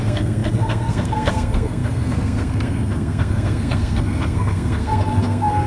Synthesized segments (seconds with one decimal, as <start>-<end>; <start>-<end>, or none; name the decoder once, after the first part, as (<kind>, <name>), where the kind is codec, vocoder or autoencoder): 0.0-5.7 (codec, SNAC)